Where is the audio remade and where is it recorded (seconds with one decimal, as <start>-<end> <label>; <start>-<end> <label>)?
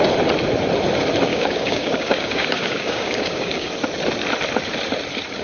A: 0.0-1.3 recorded; 1.3-3.7 remade; 3.7-5.4 recorded